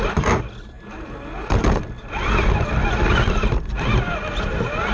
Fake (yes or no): no